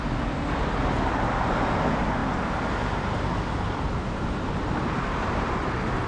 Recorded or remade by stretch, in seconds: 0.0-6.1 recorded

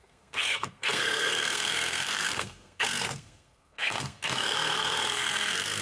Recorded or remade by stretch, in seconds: 0.0-5.8 remade

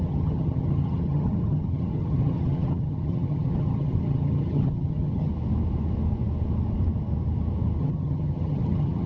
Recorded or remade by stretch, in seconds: 0.0-5.3 remade; 5.3-7.8 recorded; 7.8-9.1 remade

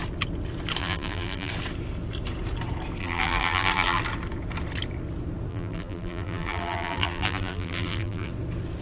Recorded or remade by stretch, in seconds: 0.0-0.8 recorded; 0.8-1.5 remade; 1.5-3.0 recorded; 3.0-4.0 remade; 4.0-5.5 recorded; 5.5-8.3 remade; 8.3-8.8 recorded

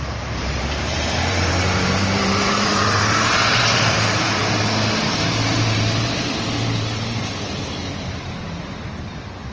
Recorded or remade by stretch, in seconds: 0.0-4.4 remade; 4.4-5.1 recorded; 5.1-9.5 remade